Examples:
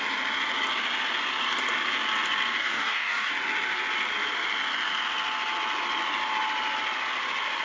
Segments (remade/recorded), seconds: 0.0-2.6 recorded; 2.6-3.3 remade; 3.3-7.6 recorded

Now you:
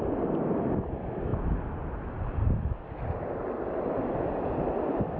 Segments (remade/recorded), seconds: 0.0-5.2 recorded

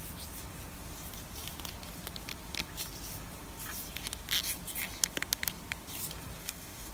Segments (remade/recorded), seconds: 0.0-6.4 recorded; 6.4-6.9 remade